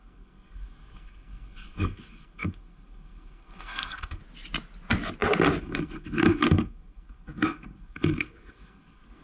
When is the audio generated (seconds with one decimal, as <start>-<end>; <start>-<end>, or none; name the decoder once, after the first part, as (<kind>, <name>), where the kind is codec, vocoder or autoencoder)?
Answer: 0.0-4.2 (codec, SNAC); 5.6-9.2